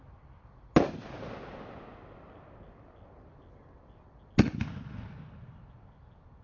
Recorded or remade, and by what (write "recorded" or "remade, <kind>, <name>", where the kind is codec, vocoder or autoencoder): recorded